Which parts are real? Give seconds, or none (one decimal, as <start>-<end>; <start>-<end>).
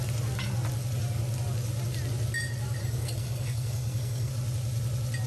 0.0-2.8; 4.3-5.3